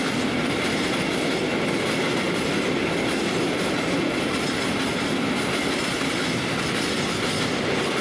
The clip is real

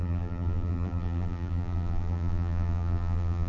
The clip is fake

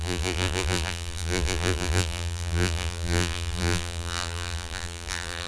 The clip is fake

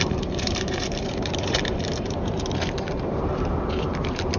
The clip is fake